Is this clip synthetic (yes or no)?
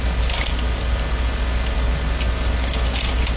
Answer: no